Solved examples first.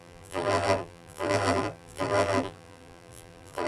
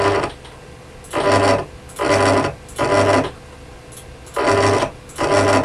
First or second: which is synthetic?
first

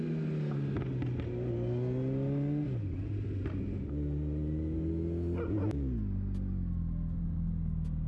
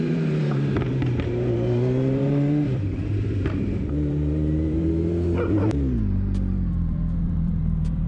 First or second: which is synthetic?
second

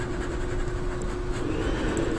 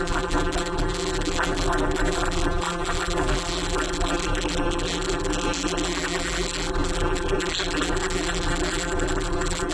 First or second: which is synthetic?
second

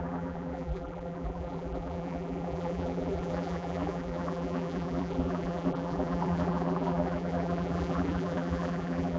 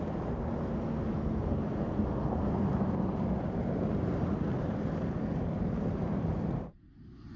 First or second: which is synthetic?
first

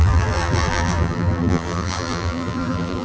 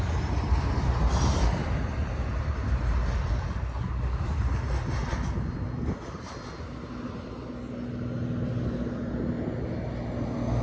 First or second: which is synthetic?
first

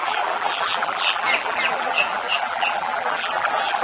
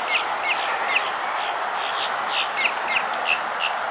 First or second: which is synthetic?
first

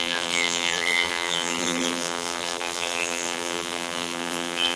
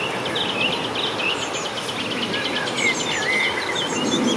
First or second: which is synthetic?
first